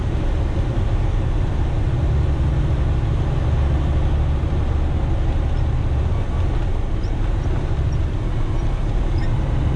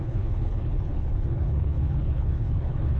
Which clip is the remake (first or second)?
second